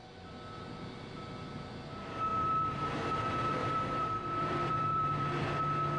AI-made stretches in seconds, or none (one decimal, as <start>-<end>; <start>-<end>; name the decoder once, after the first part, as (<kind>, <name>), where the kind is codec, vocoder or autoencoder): 2.3-2.9 (vocoder, BigVGAN v2); 3.6-5.6